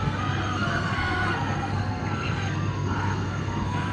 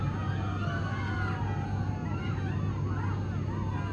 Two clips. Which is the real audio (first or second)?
second